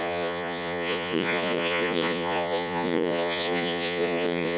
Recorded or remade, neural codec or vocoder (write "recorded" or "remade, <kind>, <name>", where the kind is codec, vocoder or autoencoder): remade, vocoder, Vocos